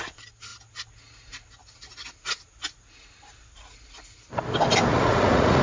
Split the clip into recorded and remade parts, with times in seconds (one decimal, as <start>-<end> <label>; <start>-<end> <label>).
0.0-4.9 recorded; 4.9-5.6 remade

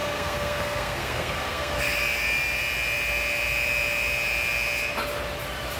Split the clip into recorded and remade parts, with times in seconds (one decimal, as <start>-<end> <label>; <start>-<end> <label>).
0.0-1.8 remade; 1.8-5.8 recorded

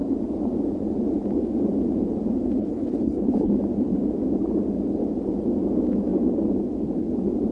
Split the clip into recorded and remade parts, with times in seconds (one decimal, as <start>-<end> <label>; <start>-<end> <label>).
0.0-2.6 recorded; 2.6-3.5 remade; 3.5-7.5 recorded

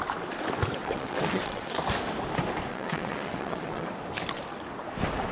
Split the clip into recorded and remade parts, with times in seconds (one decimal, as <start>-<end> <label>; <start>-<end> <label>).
0.0-0.8 recorded; 0.8-1.8 remade; 1.8-2.7 recorded; 2.7-3.9 remade; 3.9-5.3 recorded

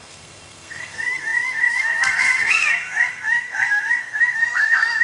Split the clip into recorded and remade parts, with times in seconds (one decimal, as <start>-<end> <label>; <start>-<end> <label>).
0.0-5.0 remade

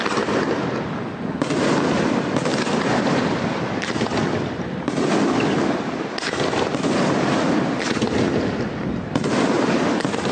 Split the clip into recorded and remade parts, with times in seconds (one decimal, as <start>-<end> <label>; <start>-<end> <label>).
0.0-2.5 recorded; 2.5-7.5 remade; 7.5-10.3 recorded

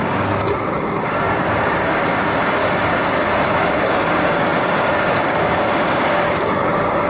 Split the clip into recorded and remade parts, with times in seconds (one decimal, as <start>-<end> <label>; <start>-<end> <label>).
0.0-2.6 remade; 2.6-3.5 recorded; 3.5-7.1 remade

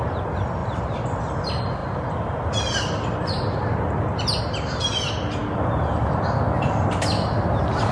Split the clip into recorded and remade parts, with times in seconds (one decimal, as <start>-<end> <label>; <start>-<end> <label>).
0.0-7.9 recorded